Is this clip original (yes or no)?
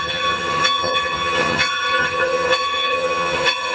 no